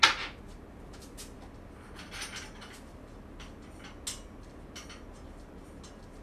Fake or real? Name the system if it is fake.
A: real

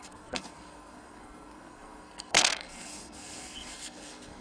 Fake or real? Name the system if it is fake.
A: fake, codec, SNAC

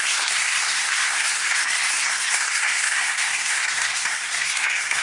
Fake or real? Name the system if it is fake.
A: fake, codec, SNAC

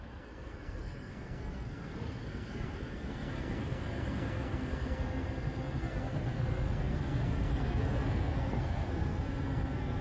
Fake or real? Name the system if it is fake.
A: fake, codec, SNAC